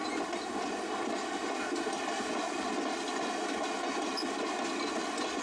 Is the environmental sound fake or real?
real